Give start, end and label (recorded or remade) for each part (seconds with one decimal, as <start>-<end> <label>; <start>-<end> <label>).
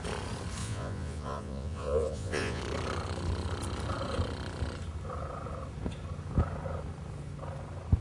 0.0-0.6 recorded; 0.6-2.6 remade; 2.6-8.0 recorded